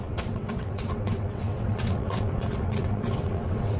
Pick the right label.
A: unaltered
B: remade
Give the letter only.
B